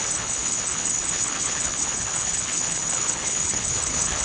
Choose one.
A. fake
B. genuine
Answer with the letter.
A